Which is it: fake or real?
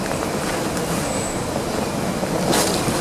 fake